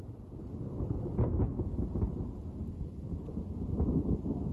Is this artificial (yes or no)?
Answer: no